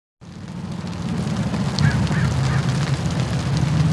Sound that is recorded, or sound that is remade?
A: recorded